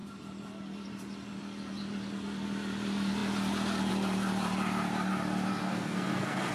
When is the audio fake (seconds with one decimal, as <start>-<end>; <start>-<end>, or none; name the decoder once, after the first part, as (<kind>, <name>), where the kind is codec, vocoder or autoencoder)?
5.5-6.5 (codec, SNAC)